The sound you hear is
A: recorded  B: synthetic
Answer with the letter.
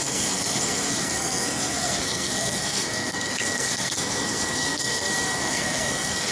B